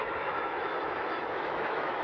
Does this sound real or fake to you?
fake